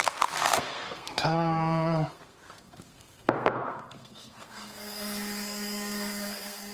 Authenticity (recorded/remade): remade